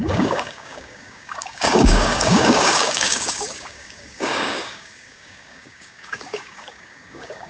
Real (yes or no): no